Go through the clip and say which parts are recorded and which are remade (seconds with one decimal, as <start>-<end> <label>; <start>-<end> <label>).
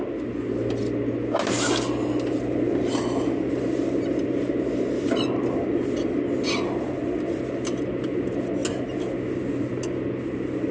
0.0-10.7 recorded